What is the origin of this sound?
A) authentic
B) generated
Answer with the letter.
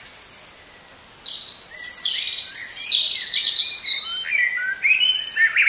A